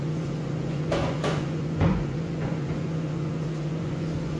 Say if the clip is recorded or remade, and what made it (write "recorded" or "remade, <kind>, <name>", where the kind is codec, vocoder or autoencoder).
remade, vocoder, Vocos